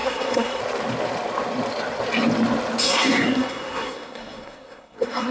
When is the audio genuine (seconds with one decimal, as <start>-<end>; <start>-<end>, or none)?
0.6-2.8